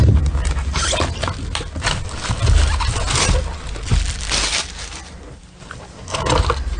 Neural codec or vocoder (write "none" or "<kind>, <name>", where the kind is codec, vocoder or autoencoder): none